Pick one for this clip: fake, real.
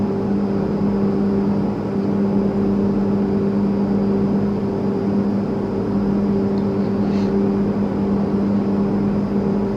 real